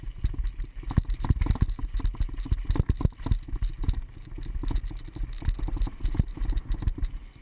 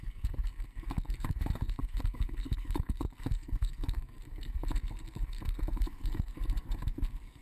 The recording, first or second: first